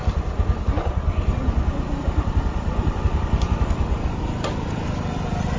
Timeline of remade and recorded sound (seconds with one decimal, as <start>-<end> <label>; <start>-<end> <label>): 0.0-5.6 recorded